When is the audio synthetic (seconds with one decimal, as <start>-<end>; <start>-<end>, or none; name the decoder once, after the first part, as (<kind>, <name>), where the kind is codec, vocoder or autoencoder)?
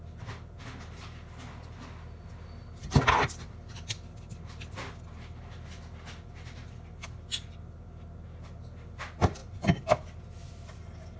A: none